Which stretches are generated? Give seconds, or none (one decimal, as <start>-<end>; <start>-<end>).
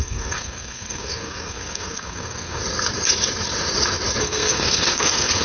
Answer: 0.0-2.6; 4.2-5.4